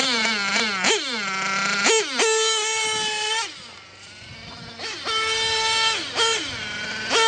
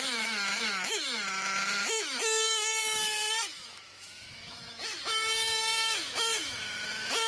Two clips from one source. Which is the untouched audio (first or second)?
first